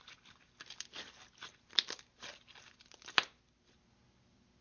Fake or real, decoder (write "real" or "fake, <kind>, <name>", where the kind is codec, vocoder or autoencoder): real